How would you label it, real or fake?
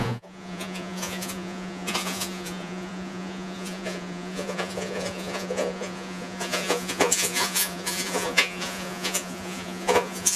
fake